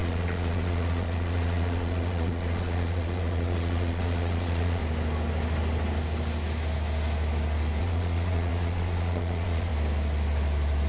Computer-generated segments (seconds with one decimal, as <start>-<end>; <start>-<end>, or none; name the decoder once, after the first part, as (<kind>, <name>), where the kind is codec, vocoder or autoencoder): 0.0-4.8 (vocoder, Vocos); 7.8-9.7